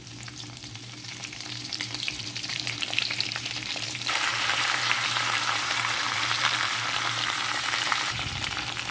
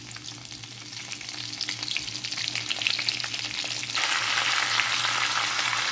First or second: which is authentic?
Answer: second